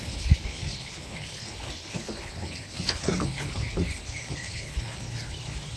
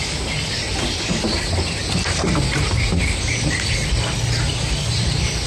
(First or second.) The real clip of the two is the second